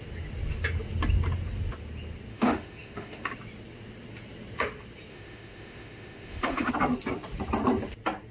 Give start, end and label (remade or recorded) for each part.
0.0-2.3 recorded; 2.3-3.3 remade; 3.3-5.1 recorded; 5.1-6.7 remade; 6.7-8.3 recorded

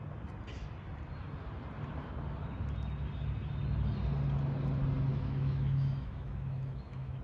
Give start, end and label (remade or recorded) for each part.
0.0-5.1 recorded; 5.1-7.2 remade

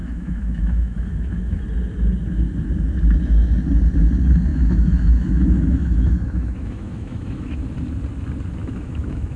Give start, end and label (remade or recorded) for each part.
0.0-1.6 remade; 1.6-4.5 recorded; 4.5-7.4 remade; 7.4-8.6 recorded; 8.6-9.4 remade

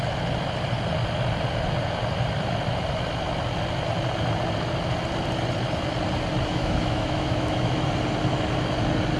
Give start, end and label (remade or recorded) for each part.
0.0-6.5 recorded; 6.5-7.8 remade; 7.8-9.2 recorded

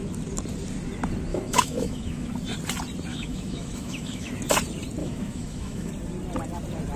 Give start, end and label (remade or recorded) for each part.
0.0-1.3 recorded; 1.3-2.3 remade; 2.3-3.1 recorded; 3.1-4.3 remade; 4.3-5.0 recorded; 5.0-5.9 remade; 5.9-7.0 recorded

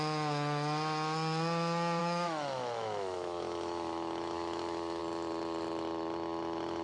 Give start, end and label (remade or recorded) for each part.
0.0-2.0 recorded; 2.0-5.0 remade; 5.0-6.8 recorded

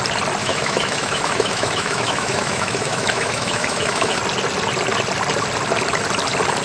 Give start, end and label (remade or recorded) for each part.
0.0-0.4 recorded; 0.4-4.2 remade; 4.2-6.6 recorded

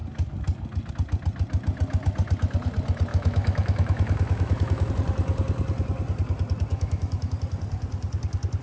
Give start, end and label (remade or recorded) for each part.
0.0-3.1 recorded; 3.1-4.9 remade; 4.9-6.7 recorded; 6.7-7.3 remade; 7.3-8.6 recorded